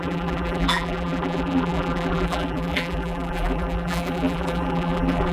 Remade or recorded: remade